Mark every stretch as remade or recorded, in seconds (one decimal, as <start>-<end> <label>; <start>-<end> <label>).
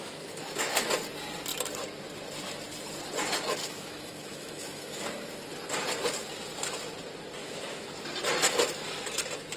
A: 0.0-0.9 remade; 0.9-3.6 recorded; 3.6-5.0 remade; 5.0-7.4 recorded; 7.4-7.9 remade; 7.9-9.6 recorded